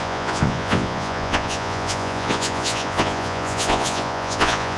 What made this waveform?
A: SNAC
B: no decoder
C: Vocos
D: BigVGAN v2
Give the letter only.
C